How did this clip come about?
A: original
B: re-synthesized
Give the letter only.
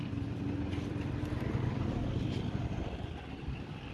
A